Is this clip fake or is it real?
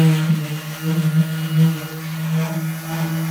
real